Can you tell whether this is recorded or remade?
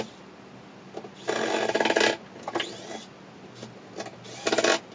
recorded